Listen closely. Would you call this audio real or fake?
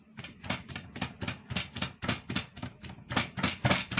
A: real